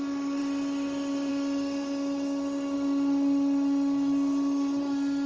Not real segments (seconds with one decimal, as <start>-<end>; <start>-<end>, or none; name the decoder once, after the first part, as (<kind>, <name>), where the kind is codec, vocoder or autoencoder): none